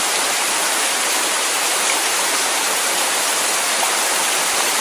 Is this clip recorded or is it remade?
remade